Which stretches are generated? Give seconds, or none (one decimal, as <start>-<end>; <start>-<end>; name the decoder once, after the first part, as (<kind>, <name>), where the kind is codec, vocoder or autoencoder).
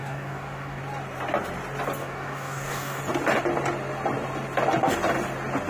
0.0-0.8 (codec, DAC); 2.0-3.0